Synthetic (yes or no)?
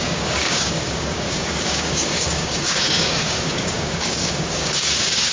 yes